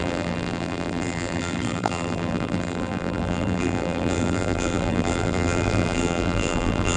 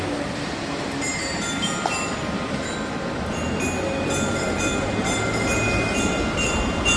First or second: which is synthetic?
first